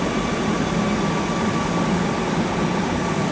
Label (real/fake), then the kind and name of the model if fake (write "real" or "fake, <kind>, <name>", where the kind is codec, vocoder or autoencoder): real